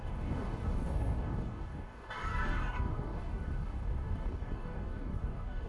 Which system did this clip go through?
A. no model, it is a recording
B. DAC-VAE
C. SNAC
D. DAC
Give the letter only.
D